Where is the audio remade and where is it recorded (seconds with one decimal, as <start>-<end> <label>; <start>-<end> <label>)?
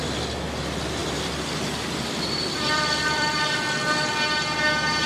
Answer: 0.0-1.0 recorded; 1.0-4.1 remade; 4.1-5.1 recorded